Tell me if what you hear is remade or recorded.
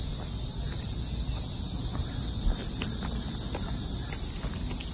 recorded